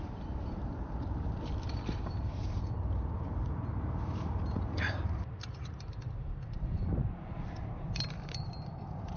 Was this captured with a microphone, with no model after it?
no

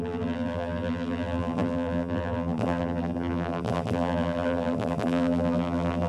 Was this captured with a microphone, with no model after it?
no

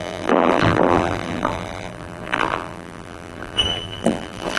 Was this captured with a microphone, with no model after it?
no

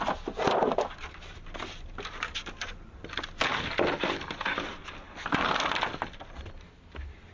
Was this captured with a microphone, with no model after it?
yes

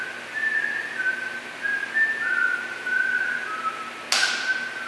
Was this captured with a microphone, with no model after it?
yes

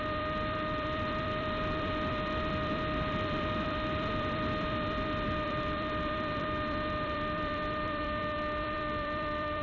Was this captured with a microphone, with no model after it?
no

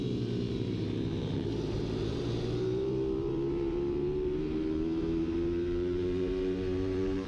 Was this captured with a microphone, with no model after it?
no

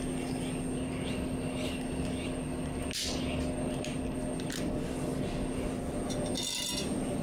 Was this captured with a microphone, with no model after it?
yes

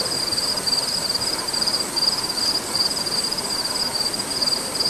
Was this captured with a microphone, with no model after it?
yes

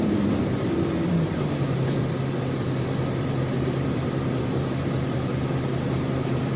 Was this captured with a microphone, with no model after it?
no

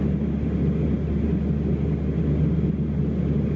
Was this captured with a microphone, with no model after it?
yes